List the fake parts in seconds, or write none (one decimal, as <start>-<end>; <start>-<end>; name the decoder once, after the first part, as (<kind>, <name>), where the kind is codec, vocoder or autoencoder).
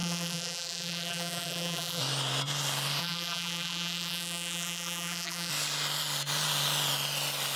0.0-2.0 (vocoder, BigVGAN v2); 3.0-5.5